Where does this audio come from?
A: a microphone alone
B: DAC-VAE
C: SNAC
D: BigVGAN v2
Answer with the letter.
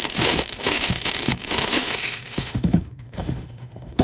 B